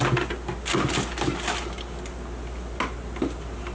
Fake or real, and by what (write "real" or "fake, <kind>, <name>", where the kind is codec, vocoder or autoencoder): real